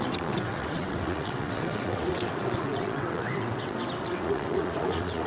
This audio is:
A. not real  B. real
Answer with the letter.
A